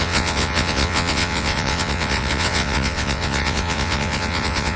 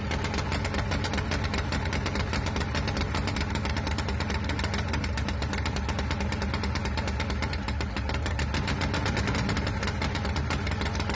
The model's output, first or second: first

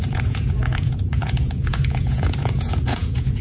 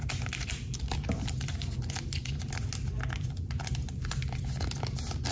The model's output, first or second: first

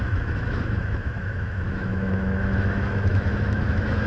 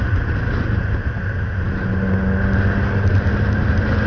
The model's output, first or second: first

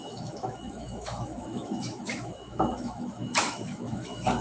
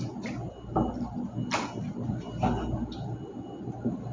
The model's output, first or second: first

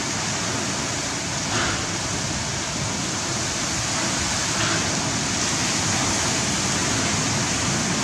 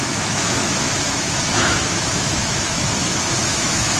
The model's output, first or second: second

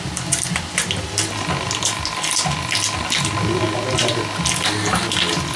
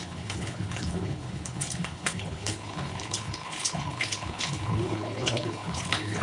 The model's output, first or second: second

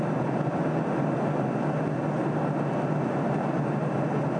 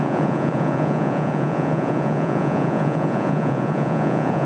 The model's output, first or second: second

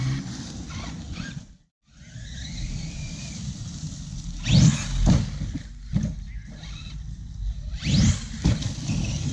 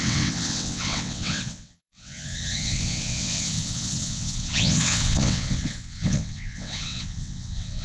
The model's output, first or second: second